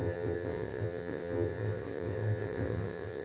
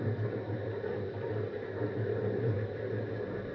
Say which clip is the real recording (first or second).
second